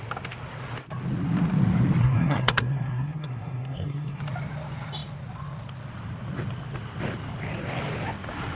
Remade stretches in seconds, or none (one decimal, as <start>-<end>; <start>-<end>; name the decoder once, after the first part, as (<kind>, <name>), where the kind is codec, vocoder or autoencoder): 2.0-4.2 (codec, SNAC)